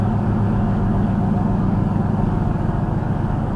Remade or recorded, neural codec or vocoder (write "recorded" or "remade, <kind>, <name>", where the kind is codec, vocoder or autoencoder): remade, codec, DAC